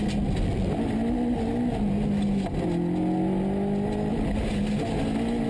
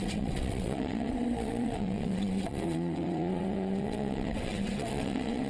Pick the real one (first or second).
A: first